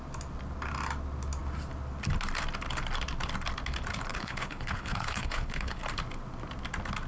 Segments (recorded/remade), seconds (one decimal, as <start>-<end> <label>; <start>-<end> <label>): 0.0-4.1 recorded; 4.1-5.8 remade; 5.8-7.1 recorded